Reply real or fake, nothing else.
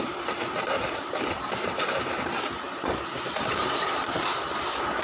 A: fake